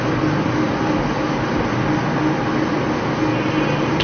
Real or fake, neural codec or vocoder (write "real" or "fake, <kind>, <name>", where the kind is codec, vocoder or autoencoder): real